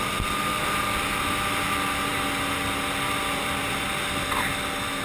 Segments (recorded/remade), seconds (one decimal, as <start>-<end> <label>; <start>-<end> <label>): 0.0-5.0 recorded